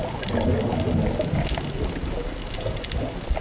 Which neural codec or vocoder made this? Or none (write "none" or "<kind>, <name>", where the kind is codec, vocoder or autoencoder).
none